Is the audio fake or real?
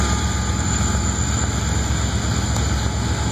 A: real